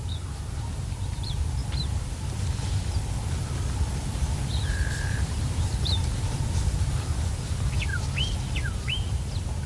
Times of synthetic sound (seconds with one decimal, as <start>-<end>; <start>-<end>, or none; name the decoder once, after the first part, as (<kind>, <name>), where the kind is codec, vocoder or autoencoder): 0.0-1.6 (vocoder, BigVGAN v2); 4.5-7.9; 8.5-9.7

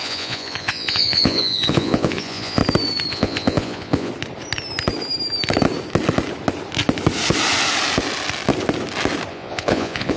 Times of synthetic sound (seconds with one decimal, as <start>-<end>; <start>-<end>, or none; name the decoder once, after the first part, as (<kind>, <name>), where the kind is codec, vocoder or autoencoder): 0.0-2.6 (vocoder, Vocos); 3.1-4.1; 9.3-10.2

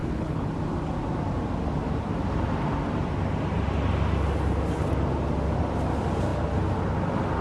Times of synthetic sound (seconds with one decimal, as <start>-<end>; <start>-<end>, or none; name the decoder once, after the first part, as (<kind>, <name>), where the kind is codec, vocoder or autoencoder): 0.0-0.5 (codec, HILCodec)

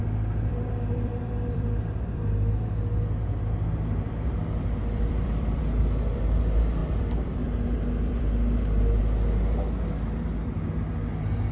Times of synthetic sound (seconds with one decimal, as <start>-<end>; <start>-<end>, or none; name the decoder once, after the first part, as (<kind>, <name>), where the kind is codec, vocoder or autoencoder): 0.5-5.6 (vocoder, BigVGAN v2); 6.8-9.0

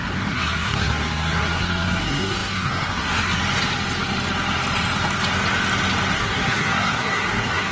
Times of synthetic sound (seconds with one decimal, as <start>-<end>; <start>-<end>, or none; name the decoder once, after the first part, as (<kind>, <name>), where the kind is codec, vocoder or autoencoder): 0.0-3.4 (codec, SNAC); 6.1-7.7

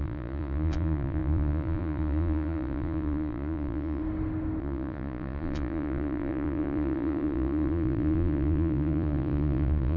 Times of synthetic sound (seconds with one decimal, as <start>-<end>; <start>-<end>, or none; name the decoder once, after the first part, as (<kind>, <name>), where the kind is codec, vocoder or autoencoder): 0.0-4.0 (vocoder, Vocos); 4.6-10.0

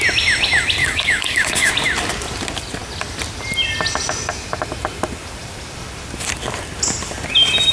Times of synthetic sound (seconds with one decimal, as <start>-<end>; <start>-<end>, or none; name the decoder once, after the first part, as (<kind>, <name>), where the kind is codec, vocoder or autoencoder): 0.8-1.7 (codec, DAC)

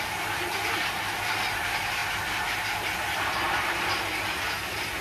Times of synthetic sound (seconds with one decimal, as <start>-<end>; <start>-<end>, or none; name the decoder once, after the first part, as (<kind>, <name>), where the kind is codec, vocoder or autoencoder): none